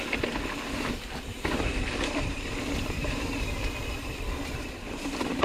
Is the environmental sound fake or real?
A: real